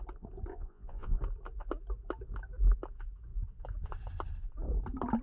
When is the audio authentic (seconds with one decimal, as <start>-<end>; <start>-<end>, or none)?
0.0-0.5; 1.2-5.2